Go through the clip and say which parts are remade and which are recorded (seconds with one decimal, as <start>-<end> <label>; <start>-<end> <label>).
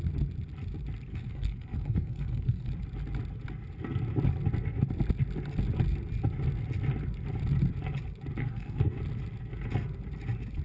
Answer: 0.0-1.1 recorded; 1.1-2.7 remade; 2.7-8.4 recorded; 8.4-9.0 remade; 9.0-10.6 recorded